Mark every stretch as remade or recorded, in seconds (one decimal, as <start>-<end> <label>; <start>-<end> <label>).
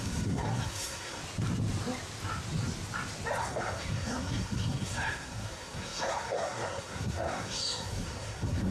0.0-1.2 remade; 1.2-3.4 recorded; 3.4-8.7 remade